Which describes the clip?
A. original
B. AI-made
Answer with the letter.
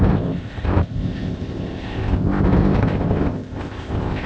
B